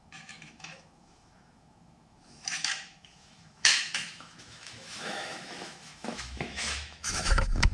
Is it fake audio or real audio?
fake